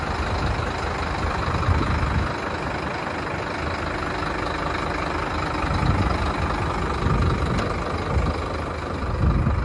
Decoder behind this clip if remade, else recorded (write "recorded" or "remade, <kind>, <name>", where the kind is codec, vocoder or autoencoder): recorded